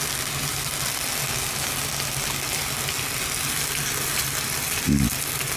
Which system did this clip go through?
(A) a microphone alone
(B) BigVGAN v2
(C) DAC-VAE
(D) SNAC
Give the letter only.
A